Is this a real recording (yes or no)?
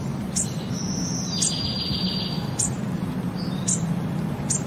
yes